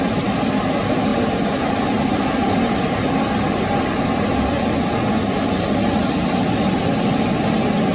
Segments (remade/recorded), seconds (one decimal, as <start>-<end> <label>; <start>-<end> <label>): 0.0-7.9 recorded